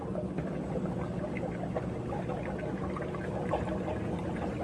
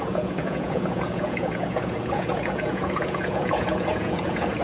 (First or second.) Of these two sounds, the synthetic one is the second